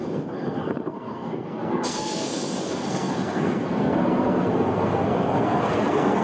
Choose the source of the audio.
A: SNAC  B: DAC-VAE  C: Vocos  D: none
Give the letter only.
A